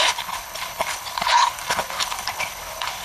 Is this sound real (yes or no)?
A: no